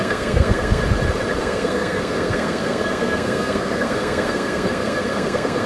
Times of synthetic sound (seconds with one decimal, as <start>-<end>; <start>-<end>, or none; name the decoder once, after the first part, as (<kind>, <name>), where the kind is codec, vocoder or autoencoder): 0.0-0.8 (codec, SNAC); 1.4-5.7